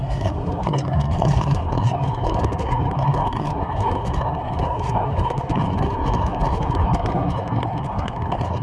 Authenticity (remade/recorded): remade